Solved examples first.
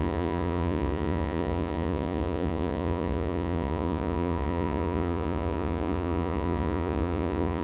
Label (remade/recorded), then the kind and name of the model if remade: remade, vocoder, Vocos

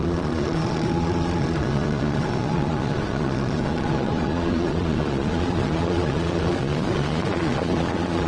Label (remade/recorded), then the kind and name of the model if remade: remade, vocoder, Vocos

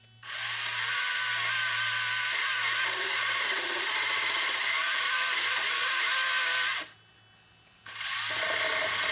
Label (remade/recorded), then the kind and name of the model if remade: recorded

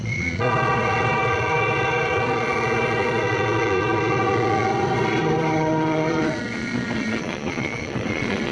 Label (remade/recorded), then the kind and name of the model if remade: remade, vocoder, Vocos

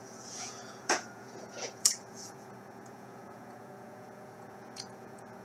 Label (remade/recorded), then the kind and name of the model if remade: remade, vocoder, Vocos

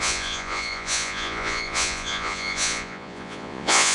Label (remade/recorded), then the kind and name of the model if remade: remade, vocoder, Vocos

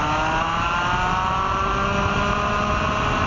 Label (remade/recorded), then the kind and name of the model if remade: recorded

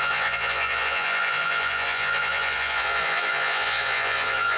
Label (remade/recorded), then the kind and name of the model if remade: remade, vocoder, Vocos